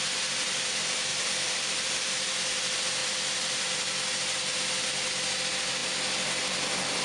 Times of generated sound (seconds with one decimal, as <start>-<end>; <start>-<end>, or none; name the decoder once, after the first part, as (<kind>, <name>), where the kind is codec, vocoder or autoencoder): 1.1-2.5 (vocoder, BigVGAN v2); 3.0-3.8